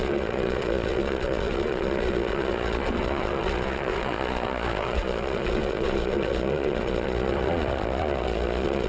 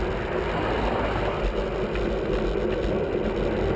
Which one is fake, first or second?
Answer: first